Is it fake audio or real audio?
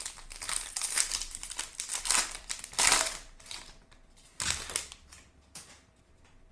fake